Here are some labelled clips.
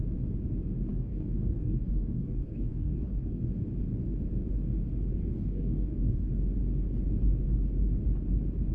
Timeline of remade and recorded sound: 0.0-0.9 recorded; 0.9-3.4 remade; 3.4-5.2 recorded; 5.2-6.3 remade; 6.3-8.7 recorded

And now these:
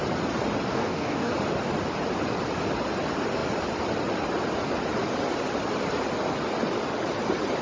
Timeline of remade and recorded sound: 0.0-0.7 recorded; 0.7-1.3 remade; 1.3-7.6 recorded

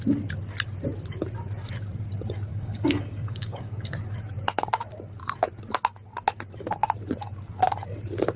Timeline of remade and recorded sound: 0.0-2.5 recorded; 2.5-3.9 remade; 3.9-8.4 recorded

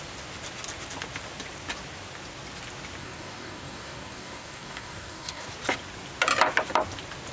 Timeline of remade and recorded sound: 0.0-3.0 recorded; 3.0-5.5 remade; 5.5-7.3 recorded

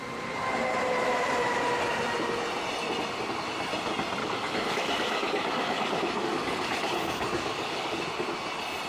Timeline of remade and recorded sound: 0.0-4.2 recorded; 4.2-8.0 remade; 8.0-8.9 recorded

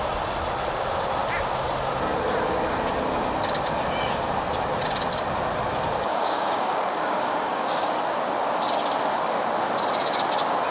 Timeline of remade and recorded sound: 0.0-6.1 recorded; 6.1-7.9 remade; 7.9-10.7 recorded

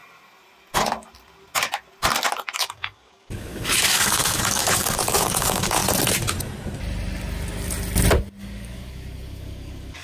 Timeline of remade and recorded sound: 0.0-2.6 recorded; 2.6-5.8 remade; 5.8-8.4 recorded; 8.4-10.0 remade